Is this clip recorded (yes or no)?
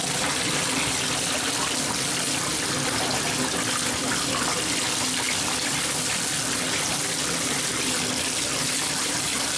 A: yes